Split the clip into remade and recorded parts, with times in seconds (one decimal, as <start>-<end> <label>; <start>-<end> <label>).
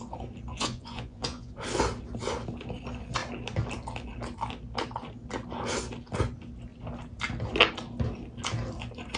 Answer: 0.0-0.5 recorded; 0.5-1.5 remade; 1.5-9.2 recorded